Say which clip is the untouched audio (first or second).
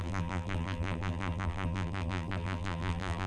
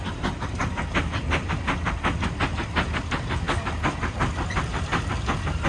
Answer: second